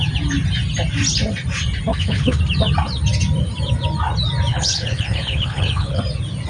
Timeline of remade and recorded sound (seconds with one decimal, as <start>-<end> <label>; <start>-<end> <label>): 0.0-1.9 recorded; 1.9-2.4 remade; 2.4-4.5 recorded; 4.5-6.0 remade; 6.0-6.5 recorded